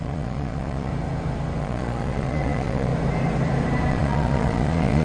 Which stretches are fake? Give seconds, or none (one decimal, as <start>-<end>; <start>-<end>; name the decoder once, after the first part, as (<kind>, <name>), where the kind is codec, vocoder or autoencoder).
0.0-0.9 (vocoder, Vocos); 1.6-2.9; 3.9-5.0